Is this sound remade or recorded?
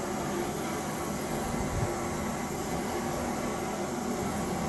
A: recorded